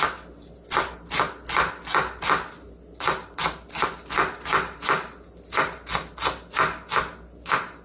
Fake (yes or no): no